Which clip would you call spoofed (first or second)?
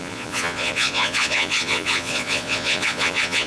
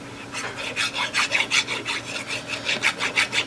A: first